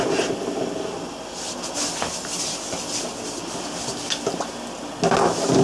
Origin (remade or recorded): recorded